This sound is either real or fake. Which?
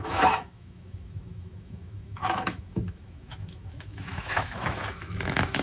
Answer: fake